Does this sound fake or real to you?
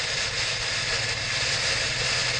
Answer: real